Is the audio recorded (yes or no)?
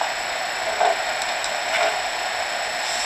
yes